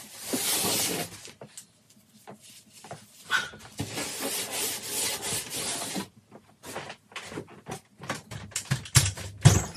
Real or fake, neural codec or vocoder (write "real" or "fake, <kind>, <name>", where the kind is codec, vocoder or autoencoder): real